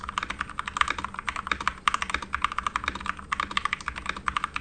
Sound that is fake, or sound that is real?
real